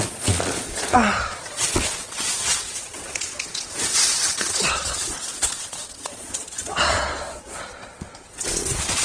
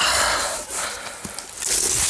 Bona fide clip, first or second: second